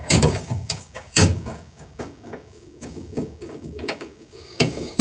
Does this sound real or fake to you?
fake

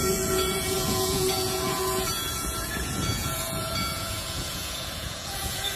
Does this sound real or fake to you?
fake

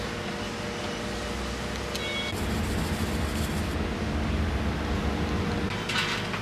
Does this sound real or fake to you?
real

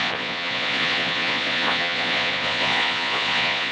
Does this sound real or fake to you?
fake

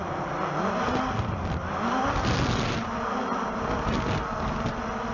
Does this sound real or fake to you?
real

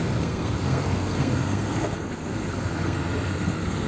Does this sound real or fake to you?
fake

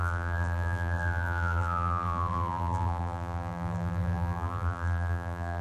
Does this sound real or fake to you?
fake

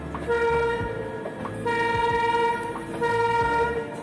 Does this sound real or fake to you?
real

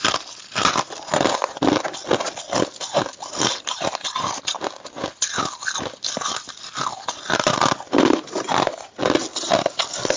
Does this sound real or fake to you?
real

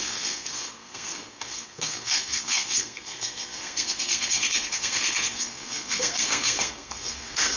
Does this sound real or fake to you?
fake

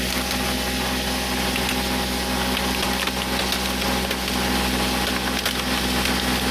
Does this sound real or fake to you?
real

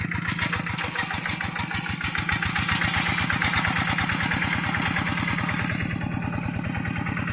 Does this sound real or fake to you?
real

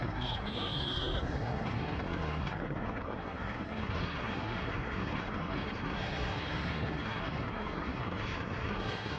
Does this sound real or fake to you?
fake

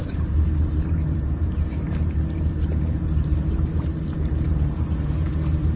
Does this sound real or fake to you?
fake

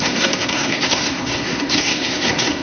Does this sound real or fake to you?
fake